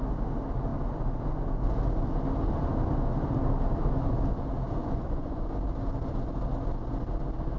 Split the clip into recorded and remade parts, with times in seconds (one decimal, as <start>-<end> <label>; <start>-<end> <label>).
0.0-4.8 recorded; 4.8-5.5 remade; 5.5-7.6 recorded